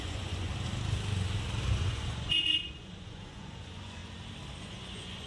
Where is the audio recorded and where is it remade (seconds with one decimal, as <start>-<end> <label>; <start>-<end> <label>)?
0.0-0.5 remade; 0.5-1.8 recorded; 1.8-4.0 remade; 4.0-4.6 recorded; 4.6-5.3 remade

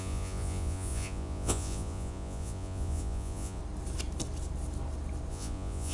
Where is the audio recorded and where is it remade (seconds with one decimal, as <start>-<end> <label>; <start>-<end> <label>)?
0.0-3.6 remade; 3.6-5.3 recorded; 5.3-5.9 remade

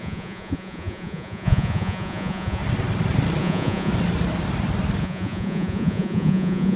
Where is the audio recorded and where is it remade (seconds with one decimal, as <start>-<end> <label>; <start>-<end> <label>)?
0.0-2.6 remade; 2.6-3.4 recorded; 3.4-3.9 remade; 3.9-5.0 recorded; 5.0-6.8 remade

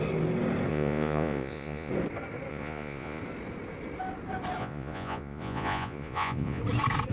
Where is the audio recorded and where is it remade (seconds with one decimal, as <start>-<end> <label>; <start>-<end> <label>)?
0.0-0.7 recorded; 0.7-1.9 remade; 1.9-2.5 recorded; 2.5-3.2 remade; 3.2-4.6 recorded; 4.6-6.6 remade; 6.6-7.1 recorded

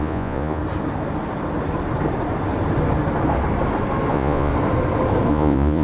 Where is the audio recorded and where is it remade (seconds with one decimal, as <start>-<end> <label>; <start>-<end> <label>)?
0.0-0.6 remade; 0.6-4.1 recorded; 4.1-4.5 remade; 4.5-5.3 recorded; 5.3-5.8 remade

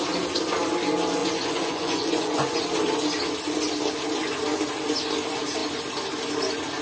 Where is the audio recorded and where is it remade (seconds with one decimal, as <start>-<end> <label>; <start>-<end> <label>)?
0.0-1.2 recorded; 1.2-2.6 remade; 2.6-6.8 recorded

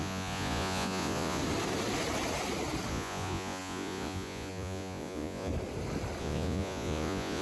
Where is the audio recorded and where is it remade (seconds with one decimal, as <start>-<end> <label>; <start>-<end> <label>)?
0.0-1.4 remade; 1.4-2.9 recorded; 2.9-5.5 remade; 5.5-6.2 recorded; 6.2-7.4 remade